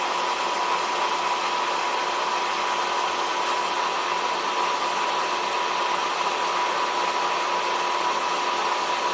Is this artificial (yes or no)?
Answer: no